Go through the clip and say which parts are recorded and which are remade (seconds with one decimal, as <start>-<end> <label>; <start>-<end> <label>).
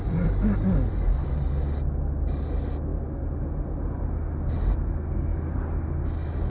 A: 0.0-6.5 recorded